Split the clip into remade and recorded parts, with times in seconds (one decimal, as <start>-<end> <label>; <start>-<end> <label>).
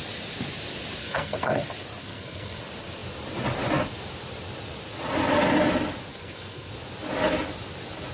0.0-1.0 recorded; 1.0-1.6 remade; 1.6-2.0 recorded; 2.0-2.6 remade; 2.6-6.1 recorded; 6.1-6.7 remade; 6.7-8.1 recorded